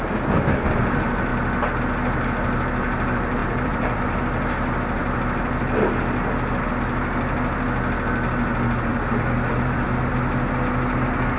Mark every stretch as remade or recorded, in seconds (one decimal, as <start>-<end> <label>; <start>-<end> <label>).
0.0-3.4 recorded; 3.4-4.0 remade; 4.0-8.9 recorded; 8.9-10.1 remade; 10.1-11.4 recorded

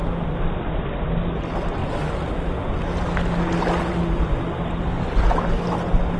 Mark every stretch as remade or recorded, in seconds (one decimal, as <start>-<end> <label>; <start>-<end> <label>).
0.0-6.2 recorded

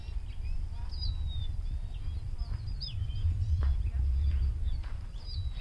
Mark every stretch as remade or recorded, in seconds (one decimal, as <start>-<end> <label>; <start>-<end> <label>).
0.0-3.0 recorded; 3.0-3.6 remade; 3.6-5.6 recorded

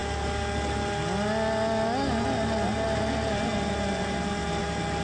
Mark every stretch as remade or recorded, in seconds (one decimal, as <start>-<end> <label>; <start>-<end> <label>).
0.0-5.0 recorded

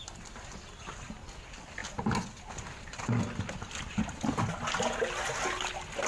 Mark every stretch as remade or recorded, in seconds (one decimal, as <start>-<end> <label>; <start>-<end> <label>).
0.0-6.1 recorded